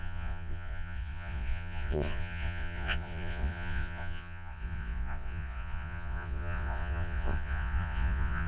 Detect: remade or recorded remade